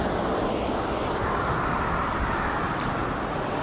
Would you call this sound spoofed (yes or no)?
yes